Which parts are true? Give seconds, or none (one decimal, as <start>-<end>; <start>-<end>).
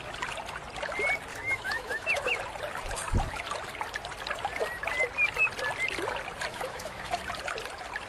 0.0-1.3; 2.4-6.5; 7.2-8.1